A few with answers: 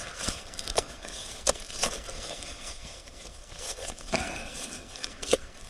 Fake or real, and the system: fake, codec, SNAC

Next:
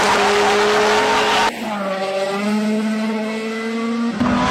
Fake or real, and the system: real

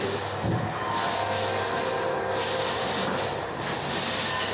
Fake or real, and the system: real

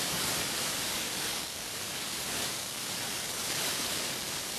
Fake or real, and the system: fake, codec, DAC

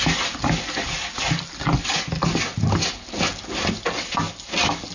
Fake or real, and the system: real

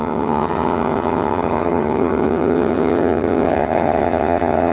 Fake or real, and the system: fake, vocoder, HiFi-GAN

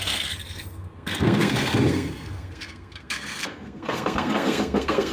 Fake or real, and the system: fake, codec, SNAC